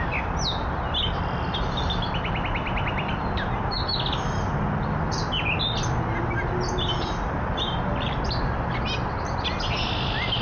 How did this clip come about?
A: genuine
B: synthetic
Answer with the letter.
A